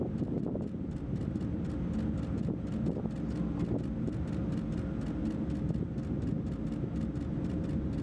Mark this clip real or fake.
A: real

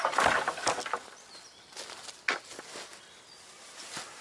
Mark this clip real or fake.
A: real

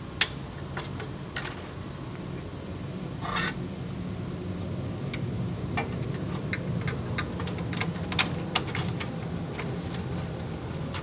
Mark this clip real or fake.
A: real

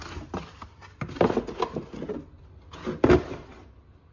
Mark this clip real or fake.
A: real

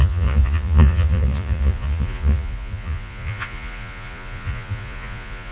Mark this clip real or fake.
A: fake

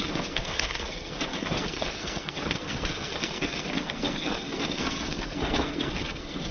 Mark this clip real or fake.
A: fake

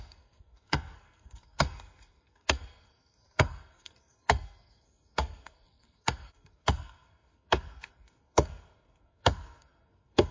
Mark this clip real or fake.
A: fake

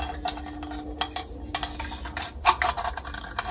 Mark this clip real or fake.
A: real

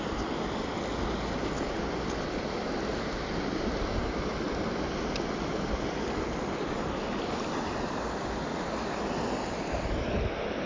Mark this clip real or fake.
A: real